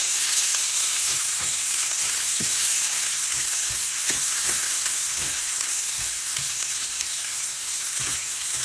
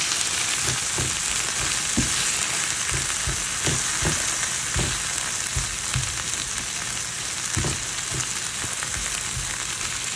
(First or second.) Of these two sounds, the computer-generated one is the first